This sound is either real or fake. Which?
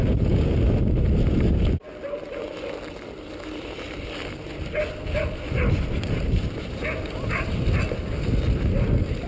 real